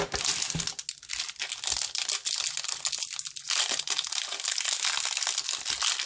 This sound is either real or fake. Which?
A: real